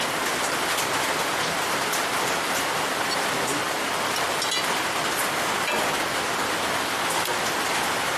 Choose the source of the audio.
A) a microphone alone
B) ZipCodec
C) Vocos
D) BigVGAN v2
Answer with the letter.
A